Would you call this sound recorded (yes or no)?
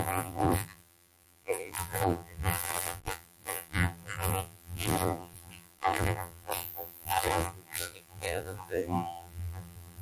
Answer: no